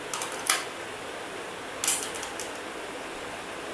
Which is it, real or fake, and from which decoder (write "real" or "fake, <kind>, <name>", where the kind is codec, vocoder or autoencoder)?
real